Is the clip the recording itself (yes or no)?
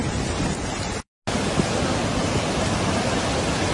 yes